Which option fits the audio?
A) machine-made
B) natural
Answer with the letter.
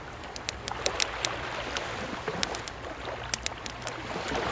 B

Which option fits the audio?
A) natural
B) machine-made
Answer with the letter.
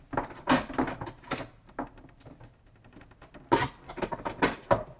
A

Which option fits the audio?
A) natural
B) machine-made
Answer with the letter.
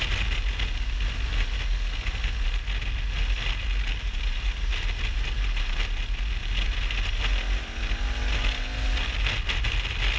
A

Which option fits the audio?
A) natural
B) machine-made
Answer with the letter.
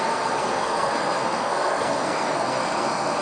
B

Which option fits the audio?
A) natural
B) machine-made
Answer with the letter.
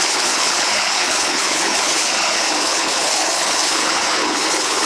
B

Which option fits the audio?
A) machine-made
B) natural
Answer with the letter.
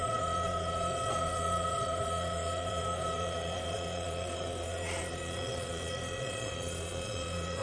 A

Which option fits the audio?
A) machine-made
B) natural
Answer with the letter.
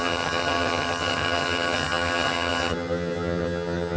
A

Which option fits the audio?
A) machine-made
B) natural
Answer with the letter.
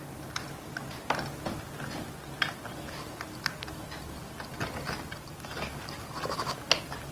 B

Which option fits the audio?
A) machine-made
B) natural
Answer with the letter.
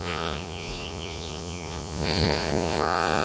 A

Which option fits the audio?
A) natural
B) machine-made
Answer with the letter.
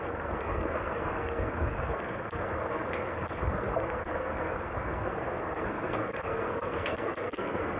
B